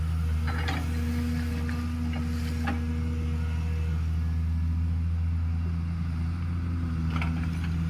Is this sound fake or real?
real